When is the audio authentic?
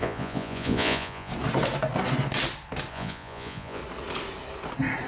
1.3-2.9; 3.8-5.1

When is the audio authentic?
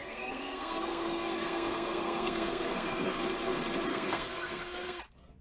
3.2-3.9; 5.0-5.4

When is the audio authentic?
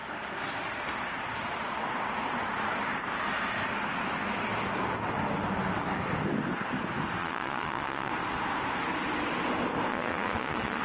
0.0-7.2; 8.1-9.9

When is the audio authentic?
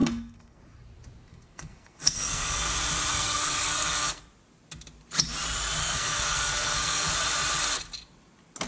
0.6-1.3; 2.7-3.1; 4.2-5.8; 7.1-8.7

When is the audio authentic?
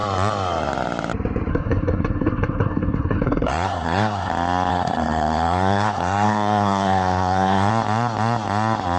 0.0-1.5; 4.3-4.7; 7.7-9.0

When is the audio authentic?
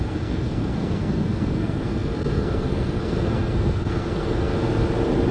4.5-5.3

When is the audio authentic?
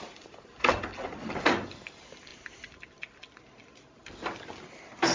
0.0-5.1